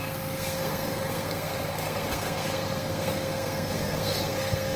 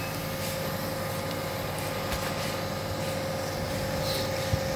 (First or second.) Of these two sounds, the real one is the second